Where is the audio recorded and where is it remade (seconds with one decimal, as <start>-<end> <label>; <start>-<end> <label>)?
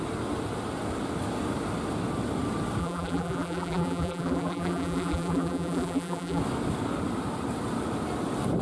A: 0.0-2.8 recorded; 2.8-6.4 remade; 6.4-8.6 recorded